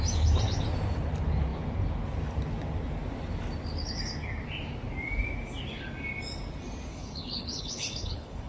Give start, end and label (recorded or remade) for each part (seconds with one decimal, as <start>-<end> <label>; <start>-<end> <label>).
0.0-6.9 recorded; 6.9-8.5 remade